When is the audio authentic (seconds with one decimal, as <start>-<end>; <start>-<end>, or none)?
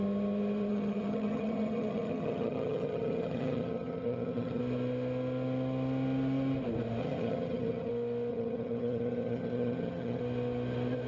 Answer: 0.0-0.7; 4.6-7.0; 7.9-8.3; 10.2-11.1